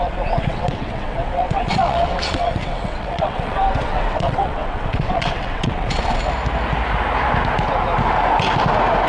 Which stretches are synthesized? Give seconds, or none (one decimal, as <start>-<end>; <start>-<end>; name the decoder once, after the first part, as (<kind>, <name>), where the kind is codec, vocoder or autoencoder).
0.0-6.2 (vocoder, WaveNeXt)